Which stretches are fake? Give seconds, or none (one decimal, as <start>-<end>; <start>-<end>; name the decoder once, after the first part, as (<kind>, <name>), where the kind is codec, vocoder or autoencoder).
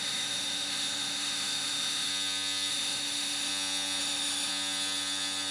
0.0-2.1 (autoencoder, DAC-VAE); 2.7-3.5; 4.0-4.5